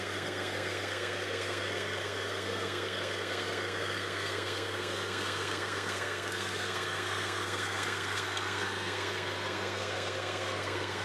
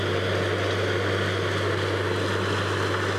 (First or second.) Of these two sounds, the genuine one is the second